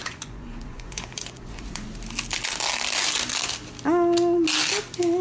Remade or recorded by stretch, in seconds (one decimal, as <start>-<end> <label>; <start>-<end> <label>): 0.0-1.9 remade; 1.9-5.2 recorded